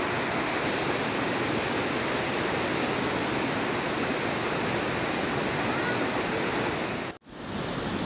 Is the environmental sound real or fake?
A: real